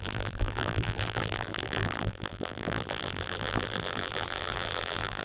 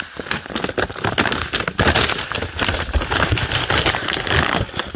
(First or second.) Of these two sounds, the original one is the second